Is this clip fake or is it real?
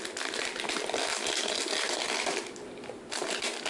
real